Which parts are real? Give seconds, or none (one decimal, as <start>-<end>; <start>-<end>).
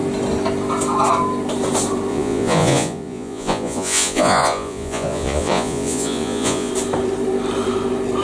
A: 0.0-2.1; 6.7-8.2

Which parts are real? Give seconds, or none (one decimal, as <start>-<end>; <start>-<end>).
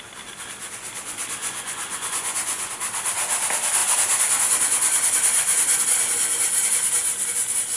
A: 0.0-1.4; 2.7-7.8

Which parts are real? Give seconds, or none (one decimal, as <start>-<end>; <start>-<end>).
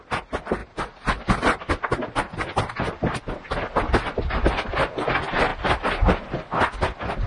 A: 0.0-7.3